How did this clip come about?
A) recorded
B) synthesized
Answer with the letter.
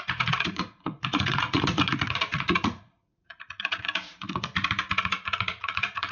B